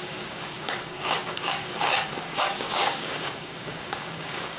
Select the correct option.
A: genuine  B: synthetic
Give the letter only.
B